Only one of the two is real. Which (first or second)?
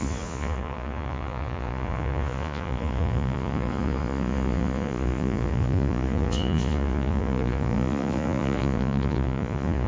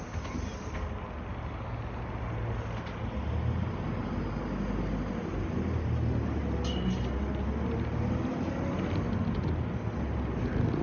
second